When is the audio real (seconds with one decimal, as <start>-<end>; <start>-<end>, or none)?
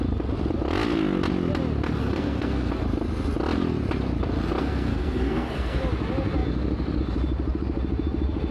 0.0-2.0; 2.7-4.6; 5.8-8.5